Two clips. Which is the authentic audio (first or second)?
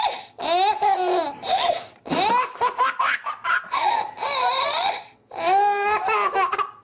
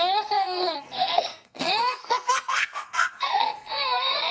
first